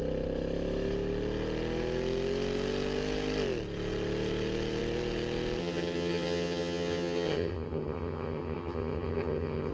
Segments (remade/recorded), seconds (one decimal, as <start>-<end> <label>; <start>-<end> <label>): 0.0-5.6 recorded; 5.6-9.7 remade